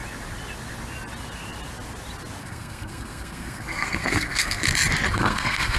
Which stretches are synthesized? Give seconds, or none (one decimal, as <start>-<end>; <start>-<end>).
2.4-4.6; 5.1-5.8